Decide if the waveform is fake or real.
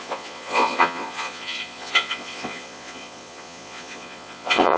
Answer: fake